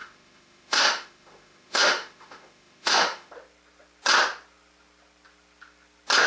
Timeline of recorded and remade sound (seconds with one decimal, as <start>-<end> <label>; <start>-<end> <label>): 0.0-3.3 remade; 3.3-6.3 recorded

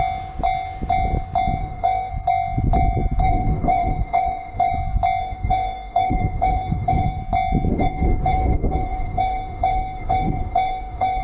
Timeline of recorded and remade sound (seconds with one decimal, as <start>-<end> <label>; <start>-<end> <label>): 0.0-1.6 recorded; 1.6-2.1 remade; 2.1-3.2 recorded; 3.2-4.7 remade; 4.7-5.2 recorded; 5.2-7.2 remade; 7.2-7.7 recorded; 7.7-11.2 remade

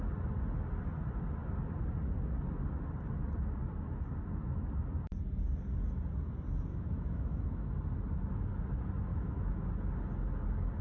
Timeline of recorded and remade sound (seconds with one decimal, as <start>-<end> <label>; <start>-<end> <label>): 0.0-6.7 recorded; 6.7-7.7 remade; 7.7-9.1 recorded; 9.1-9.7 remade; 9.7-10.8 recorded

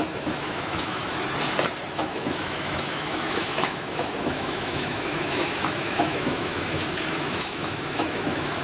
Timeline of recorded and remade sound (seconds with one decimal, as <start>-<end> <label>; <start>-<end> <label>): 0.0-1.0 remade; 1.0-1.9 recorded; 1.9-8.6 remade

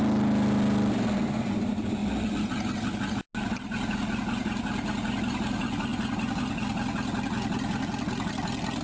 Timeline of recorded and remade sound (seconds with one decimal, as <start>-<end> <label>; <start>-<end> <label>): 0.0-8.8 recorded

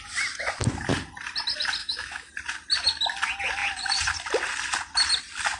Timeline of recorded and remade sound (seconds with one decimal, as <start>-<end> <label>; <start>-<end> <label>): 0.0-1.8 recorded; 1.8-2.3 remade; 2.3-5.6 recorded

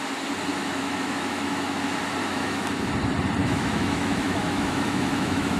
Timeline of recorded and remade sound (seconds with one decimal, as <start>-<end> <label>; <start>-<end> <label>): 0.0-0.5 recorded; 0.5-1.8 remade; 1.8-2.2 recorded; 2.2-2.7 remade; 2.7-3.4 recorded; 3.4-5.6 remade